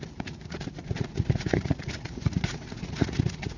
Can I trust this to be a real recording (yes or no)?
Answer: no